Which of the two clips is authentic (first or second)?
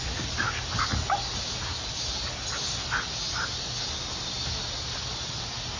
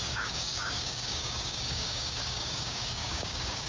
first